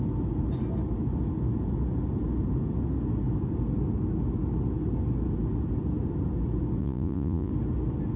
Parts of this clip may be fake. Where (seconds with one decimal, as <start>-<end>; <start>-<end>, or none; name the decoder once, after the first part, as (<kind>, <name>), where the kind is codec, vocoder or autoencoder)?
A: 6.8-7.5 (vocoder, Vocos)